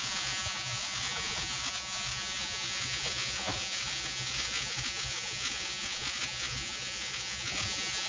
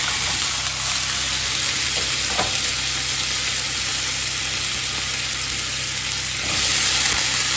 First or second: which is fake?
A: first